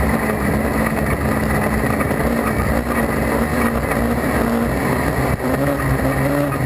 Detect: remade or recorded recorded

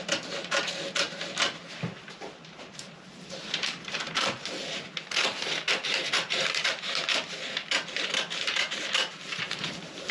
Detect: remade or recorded remade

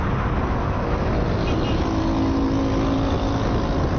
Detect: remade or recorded recorded